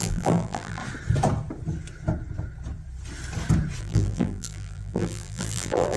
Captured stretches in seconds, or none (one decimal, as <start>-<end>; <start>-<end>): 0.8-3.8